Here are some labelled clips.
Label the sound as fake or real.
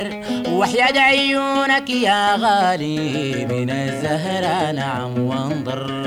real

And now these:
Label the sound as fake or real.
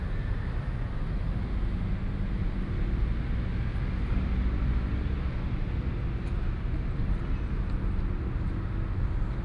real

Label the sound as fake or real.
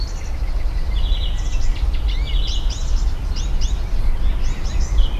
real